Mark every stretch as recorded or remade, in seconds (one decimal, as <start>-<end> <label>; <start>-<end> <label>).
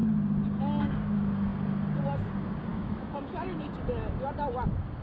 0.0-2.7 recorded; 2.7-3.8 remade; 3.8-5.0 recorded